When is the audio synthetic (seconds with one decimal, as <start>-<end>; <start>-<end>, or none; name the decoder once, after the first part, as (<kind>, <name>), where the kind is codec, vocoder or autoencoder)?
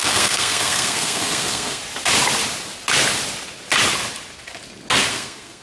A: 0.0-1.8 (codec, SNAC); 5.1-5.6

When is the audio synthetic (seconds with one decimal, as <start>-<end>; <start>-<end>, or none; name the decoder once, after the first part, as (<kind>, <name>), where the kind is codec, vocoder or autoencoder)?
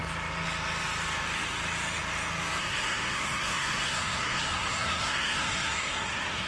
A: 2.6-6.5 (codec, SNAC)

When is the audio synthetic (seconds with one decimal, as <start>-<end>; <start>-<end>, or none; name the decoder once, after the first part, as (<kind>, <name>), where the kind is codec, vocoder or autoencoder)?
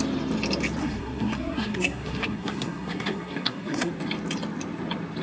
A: 0.8-3.9 (codec, SNAC)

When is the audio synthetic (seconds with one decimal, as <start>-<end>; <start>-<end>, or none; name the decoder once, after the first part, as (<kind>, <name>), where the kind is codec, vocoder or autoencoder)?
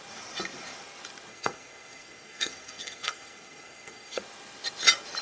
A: 1.3-4.2 (codec, SNAC)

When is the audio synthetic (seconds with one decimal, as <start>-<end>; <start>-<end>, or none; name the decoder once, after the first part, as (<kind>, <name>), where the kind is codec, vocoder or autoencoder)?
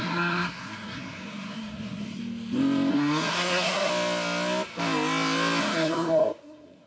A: 0.0-2.2 (codec, SNAC); 2.9-3.9; 5.6-6.9